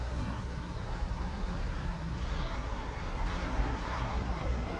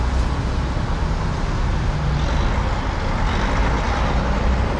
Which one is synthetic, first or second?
first